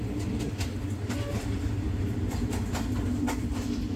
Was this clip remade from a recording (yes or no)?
no